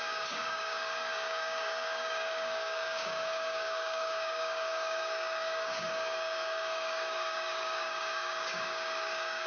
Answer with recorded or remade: remade